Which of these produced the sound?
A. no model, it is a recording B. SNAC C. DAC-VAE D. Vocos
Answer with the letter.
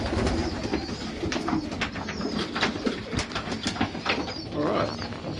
A